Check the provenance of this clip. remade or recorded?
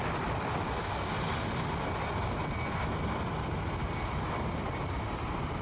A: recorded